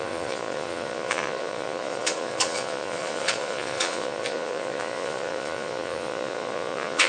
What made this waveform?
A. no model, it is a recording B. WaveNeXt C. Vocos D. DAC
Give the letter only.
C